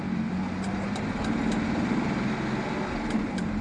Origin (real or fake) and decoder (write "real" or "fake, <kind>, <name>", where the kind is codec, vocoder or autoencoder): real